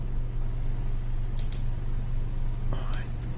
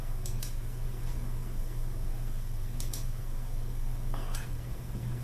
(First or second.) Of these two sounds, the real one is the first